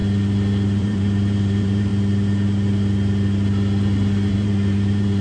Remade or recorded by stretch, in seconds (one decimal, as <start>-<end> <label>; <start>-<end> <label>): 0.0-0.8 recorded; 0.8-1.9 remade; 1.9-4.3 recorded; 4.3-5.2 remade